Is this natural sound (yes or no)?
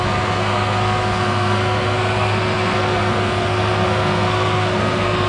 no